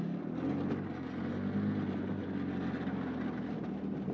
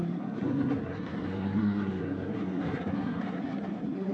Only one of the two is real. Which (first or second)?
first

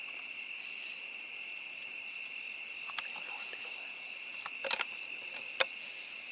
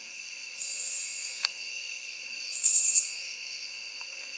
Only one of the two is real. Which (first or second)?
first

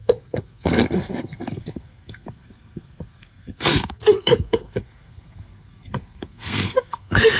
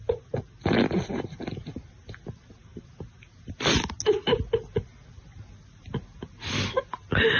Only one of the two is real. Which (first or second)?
second